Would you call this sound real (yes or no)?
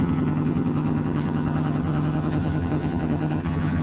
no